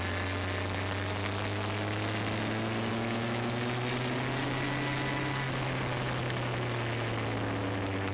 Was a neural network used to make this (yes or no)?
no